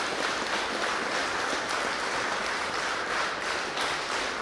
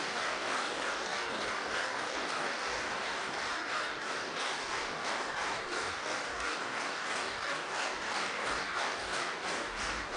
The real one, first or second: first